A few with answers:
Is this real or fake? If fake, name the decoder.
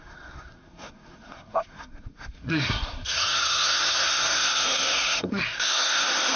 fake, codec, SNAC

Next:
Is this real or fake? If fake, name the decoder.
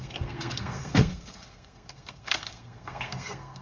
fake, codec, SNAC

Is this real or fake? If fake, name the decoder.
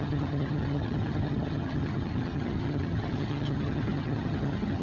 fake, vocoder, HiFi-GAN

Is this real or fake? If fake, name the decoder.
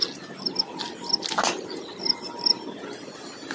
real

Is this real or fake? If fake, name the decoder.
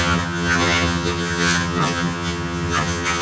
fake, vocoder, HiFi-GAN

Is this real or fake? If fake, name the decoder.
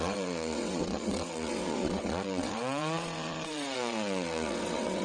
fake, vocoder, WaveNeXt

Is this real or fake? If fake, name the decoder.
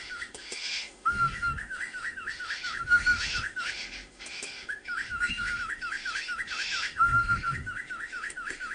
fake, autoencoder, DAC-VAE